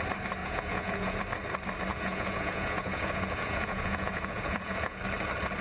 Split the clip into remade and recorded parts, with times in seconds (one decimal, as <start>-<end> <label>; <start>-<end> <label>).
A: 0.0-0.4 recorded; 0.4-1.2 remade; 1.2-1.9 recorded; 1.9-5.0 remade; 5.0-5.6 recorded